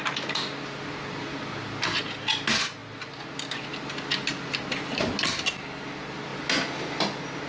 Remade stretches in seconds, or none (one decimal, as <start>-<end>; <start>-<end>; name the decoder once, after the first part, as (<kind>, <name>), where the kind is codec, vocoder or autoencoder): none